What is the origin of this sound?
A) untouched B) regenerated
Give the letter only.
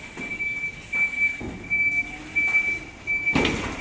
A